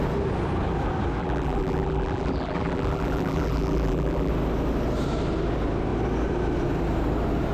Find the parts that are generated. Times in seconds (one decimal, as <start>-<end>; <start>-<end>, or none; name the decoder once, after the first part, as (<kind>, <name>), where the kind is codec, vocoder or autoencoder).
1.2-4.3 (vocoder, BigVGAN v2)